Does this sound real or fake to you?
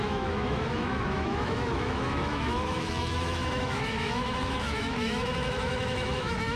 fake